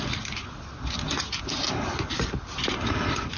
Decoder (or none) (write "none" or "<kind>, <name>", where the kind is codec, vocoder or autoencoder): none